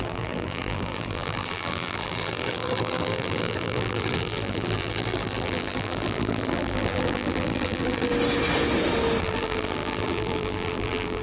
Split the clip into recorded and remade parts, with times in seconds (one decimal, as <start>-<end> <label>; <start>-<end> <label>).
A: 0.0-8.1 remade; 8.1-9.2 recorded; 9.2-11.2 remade